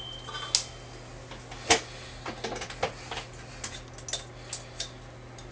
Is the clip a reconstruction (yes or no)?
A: no